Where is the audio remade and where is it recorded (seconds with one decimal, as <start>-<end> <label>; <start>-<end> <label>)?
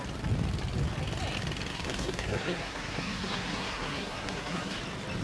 0.0-1.7 recorded; 1.7-4.8 remade; 4.8-5.2 recorded